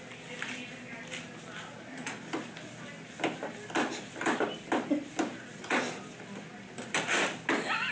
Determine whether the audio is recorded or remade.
recorded